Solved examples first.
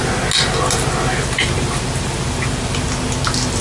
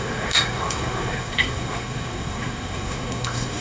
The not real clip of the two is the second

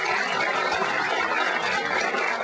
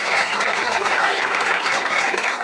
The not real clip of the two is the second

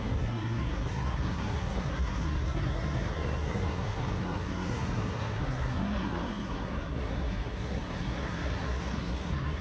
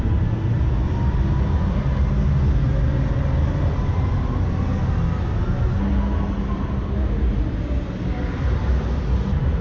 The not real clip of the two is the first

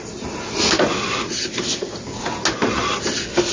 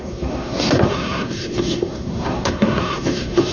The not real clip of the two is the second